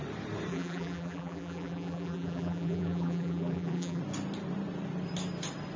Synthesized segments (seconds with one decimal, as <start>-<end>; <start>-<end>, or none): 0.5-4.0